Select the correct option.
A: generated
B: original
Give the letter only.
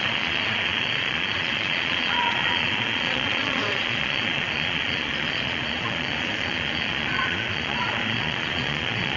A